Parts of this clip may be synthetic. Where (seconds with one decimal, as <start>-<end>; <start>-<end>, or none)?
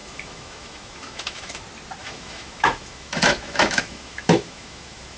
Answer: 0.0-1.6; 2.0-5.2